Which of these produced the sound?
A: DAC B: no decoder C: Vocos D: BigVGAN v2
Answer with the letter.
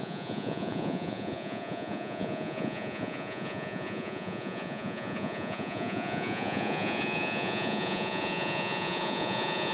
C